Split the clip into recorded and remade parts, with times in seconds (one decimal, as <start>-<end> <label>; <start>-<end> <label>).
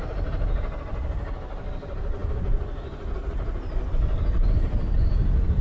0.0-5.6 recorded